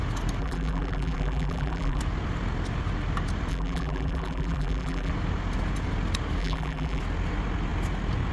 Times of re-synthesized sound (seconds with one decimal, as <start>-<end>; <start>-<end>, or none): 0.4-2.0; 3.5-5.1; 6.4-7.0